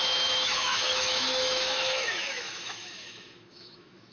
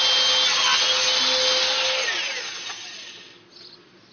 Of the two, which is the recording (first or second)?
second